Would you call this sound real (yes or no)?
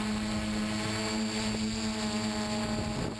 yes